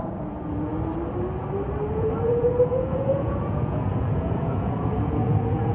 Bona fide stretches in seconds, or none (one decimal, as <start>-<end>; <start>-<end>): 0.7-1.9